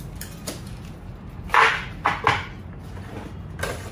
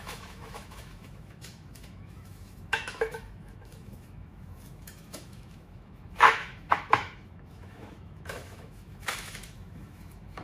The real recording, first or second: first